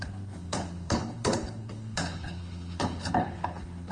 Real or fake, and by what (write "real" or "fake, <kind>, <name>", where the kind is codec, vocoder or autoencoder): fake, codec, HILCodec